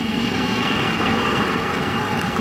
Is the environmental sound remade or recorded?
remade